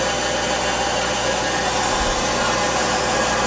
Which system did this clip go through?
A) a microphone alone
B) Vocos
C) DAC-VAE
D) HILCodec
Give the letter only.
A